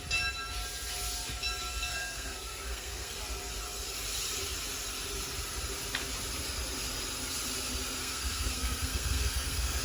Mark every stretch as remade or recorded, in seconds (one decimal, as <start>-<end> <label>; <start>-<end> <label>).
0.0-1.9 recorded; 1.9-3.1 remade; 3.1-8.0 recorded; 8.0-9.8 remade